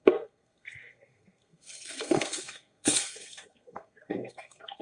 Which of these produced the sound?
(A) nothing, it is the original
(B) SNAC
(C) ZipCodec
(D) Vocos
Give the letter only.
B